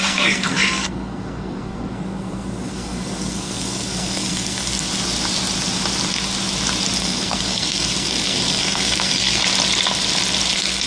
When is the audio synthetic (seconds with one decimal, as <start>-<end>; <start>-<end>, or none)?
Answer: 0.0-4.9; 7.0-9.4; 10.5-10.9